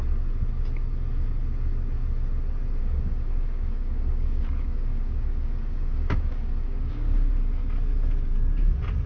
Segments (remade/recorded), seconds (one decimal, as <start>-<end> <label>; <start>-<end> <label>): 0.0-2.8 recorded; 2.8-7.3 remade; 7.3-9.1 recorded